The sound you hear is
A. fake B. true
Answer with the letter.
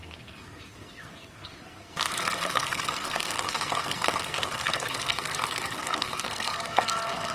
A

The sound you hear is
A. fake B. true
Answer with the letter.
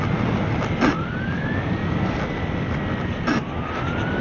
B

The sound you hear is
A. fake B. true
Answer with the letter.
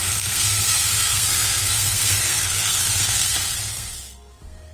A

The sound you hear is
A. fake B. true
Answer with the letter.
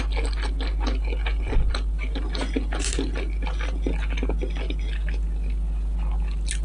B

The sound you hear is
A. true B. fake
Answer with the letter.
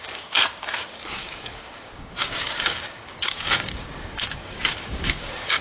B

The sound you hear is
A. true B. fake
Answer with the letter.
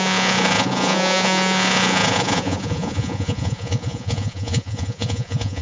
B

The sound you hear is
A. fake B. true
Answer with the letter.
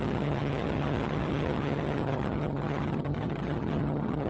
A